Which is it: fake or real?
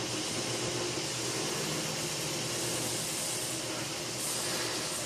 real